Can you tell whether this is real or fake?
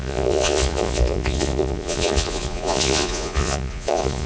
fake